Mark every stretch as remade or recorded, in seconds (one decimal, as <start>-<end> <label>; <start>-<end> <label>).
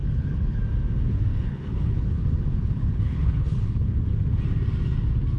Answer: 0.0-0.6 remade; 0.6-1.3 recorded; 1.3-4.0 remade; 4.0-5.4 recorded